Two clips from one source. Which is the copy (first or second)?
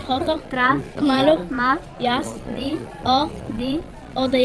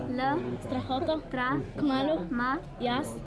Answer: first